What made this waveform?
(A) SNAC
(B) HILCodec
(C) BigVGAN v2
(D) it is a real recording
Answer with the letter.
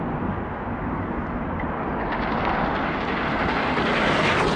D